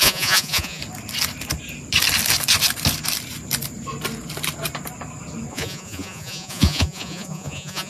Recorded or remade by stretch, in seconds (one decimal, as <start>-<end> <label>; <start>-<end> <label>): 0.0-0.8 remade; 0.8-5.5 recorded; 5.5-7.9 remade